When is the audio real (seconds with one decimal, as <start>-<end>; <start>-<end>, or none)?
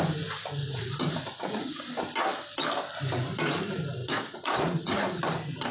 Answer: 0.0-0.6; 1.7-4.0; 5.2-5.7